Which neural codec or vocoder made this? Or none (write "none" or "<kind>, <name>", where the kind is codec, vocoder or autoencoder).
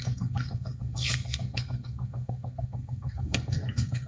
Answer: codec, SNAC